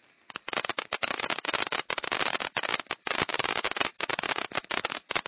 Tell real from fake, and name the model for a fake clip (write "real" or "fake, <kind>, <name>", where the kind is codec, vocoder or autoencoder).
real